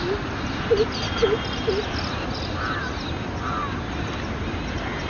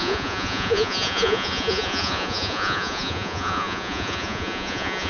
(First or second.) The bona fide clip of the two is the first